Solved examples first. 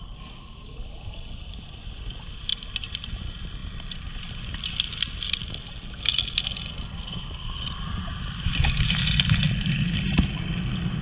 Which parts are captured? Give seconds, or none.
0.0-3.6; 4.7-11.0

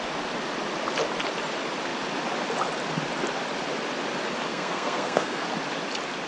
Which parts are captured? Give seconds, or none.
0.0-4.5; 5.5-6.3

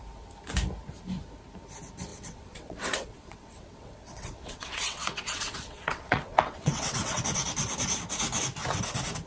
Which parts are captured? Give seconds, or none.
0.0-2.1; 7.2-9.3

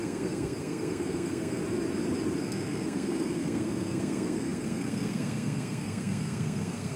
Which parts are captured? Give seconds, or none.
1.6-2.4